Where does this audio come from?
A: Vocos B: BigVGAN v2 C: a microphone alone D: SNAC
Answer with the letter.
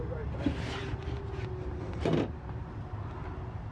C